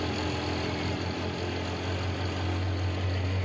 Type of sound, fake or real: real